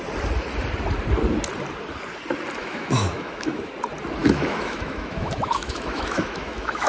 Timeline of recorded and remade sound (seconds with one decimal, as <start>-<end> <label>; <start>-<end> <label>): 0.0-2.6 recorded; 2.6-3.7 remade; 3.7-4.2 recorded; 4.2-6.9 remade